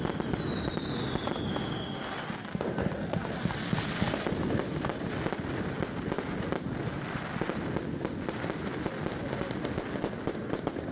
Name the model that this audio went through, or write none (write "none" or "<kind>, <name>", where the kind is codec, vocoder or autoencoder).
none